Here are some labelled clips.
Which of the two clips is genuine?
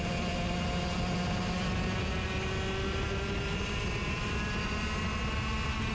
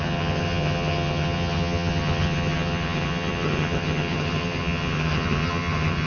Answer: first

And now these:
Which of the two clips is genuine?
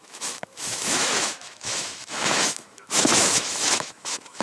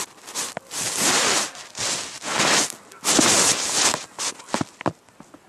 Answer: second